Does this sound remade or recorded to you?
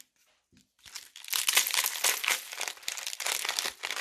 recorded